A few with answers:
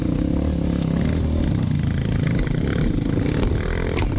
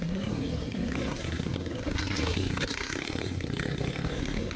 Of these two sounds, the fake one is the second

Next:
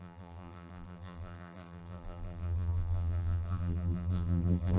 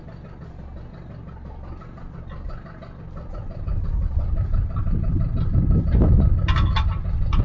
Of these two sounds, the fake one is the first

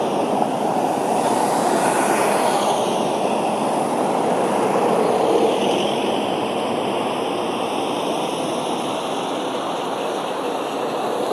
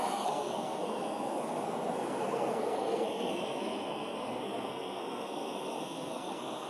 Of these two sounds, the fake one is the second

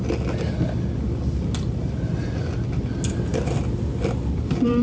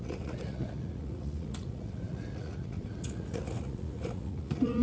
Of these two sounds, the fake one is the second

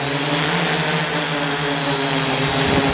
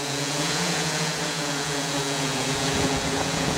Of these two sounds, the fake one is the second